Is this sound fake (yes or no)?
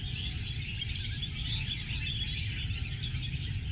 no